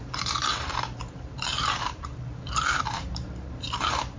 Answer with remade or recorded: remade